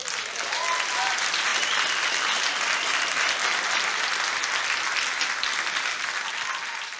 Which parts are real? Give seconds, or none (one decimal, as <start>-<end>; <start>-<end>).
0.0-7.0